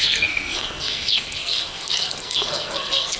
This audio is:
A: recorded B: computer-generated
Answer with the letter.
B